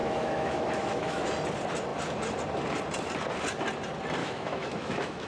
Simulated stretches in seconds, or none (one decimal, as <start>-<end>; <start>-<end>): 0.0-1.3; 4.2-5.3